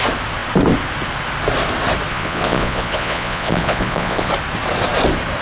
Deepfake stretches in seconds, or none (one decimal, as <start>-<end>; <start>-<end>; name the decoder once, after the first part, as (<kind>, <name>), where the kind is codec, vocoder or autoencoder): 2.1-4.3 (vocoder, Vocos)